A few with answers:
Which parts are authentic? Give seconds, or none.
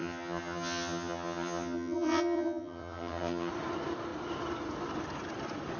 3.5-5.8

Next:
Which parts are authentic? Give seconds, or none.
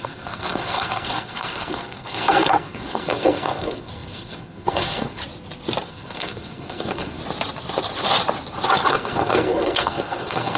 5.2-5.9; 7.2-8.9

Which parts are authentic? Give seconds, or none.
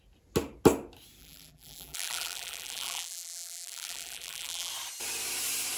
0.0-1.2; 4.7-5.8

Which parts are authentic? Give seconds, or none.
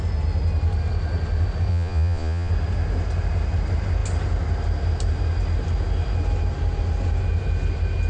0.0-1.7; 2.5-8.1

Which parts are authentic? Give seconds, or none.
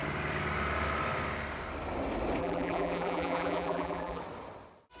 0.0-2.4; 4.2-5.0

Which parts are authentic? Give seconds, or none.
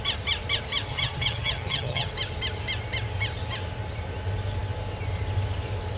0.0-0.9; 2.1-6.0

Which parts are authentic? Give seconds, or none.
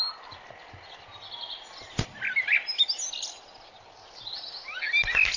0.0-5.4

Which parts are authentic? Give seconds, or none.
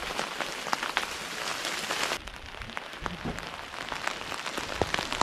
0.0-5.2